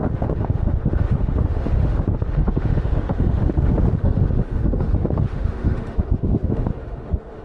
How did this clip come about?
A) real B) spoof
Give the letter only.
B